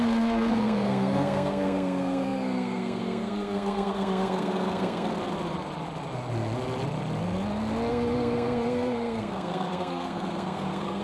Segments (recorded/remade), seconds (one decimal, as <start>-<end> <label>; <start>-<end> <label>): 0.0-5.1 remade; 5.1-7.9 recorded; 7.9-11.0 remade

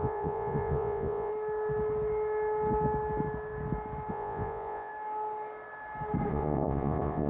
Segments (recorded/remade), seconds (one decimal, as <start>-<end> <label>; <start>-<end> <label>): 0.0-1.3 remade; 1.3-4.1 recorded; 4.1-4.9 remade; 4.9-6.3 recorded; 6.3-7.3 remade

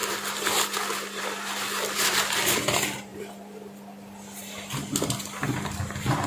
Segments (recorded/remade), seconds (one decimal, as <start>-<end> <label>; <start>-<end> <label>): 0.0-1.2 recorded; 1.2-6.3 remade